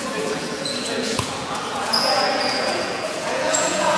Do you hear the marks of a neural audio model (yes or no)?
yes